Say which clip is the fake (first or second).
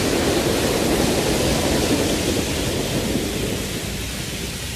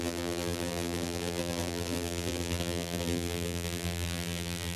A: second